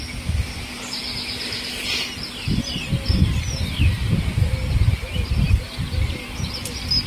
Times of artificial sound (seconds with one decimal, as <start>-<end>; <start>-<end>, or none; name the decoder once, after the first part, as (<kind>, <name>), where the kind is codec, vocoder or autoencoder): none